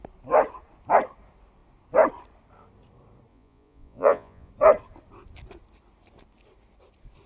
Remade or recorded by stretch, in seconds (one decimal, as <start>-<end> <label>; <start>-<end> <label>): 0.0-3.3 recorded; 3.3-4.5 remade; 4.5-7.3 recorded